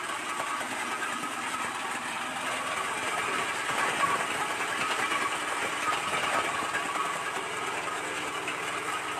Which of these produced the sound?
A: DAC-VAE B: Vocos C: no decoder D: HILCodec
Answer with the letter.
C